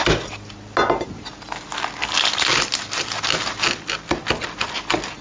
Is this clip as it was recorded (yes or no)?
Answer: yes